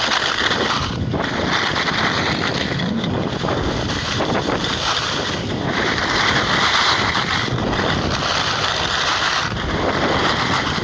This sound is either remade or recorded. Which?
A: remade